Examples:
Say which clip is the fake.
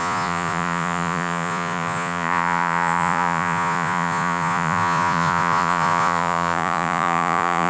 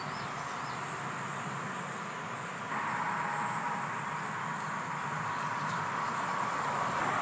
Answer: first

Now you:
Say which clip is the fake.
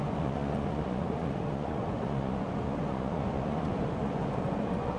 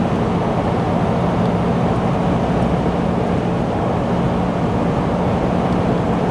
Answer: first